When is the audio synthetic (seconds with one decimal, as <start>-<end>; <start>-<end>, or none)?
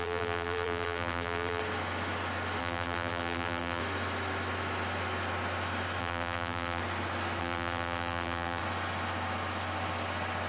0.0-1.6; 2.6-3.8; 6.0-6.8; 7.4-8.6